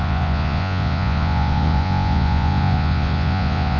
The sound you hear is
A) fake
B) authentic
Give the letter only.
A